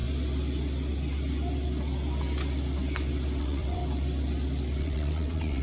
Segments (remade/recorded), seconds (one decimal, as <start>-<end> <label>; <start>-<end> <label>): 0.0-3.4 recorded; 3.4-3.8 remade; 3.8-4.8 recorded; 4.8-5.6 remade